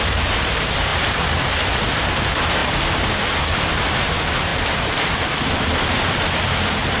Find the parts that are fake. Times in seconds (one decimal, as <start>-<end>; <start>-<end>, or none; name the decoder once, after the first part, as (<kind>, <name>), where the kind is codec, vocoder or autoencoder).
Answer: 4.5-6.2 (vocoder, BigVGAN v2)